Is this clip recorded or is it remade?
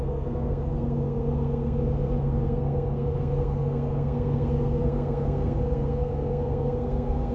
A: remade